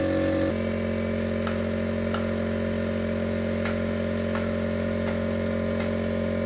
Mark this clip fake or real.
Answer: real